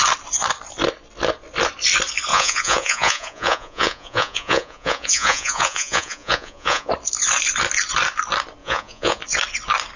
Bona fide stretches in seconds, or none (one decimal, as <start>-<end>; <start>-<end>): 0.0-2.3; 6.9-8.6; 9.2-10.0